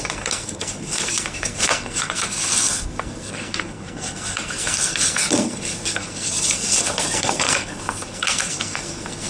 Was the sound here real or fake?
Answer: fake